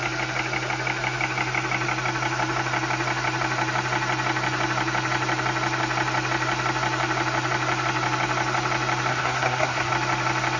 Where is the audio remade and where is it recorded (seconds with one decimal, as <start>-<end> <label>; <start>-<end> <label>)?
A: 0.0-9.1 recorded; 9.1-9.9 remade; 9.9-10.6 recorded